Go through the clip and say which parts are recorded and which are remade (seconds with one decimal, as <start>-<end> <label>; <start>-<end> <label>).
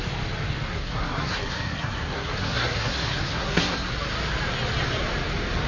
0.0-0.7 recorded; 0.7-3.9 remade; 3.9-5.7 recorded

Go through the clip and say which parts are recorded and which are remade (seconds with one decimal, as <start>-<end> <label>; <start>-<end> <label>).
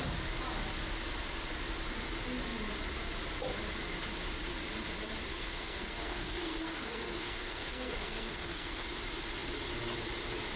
0.0-5.3 recorded; 5.3-8.9 remade; 8.9-10.6 recorded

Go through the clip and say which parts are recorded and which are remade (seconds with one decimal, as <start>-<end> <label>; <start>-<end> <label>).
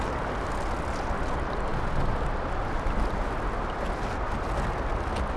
0.0-5.4 recorded